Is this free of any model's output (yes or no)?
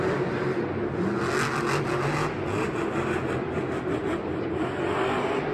yes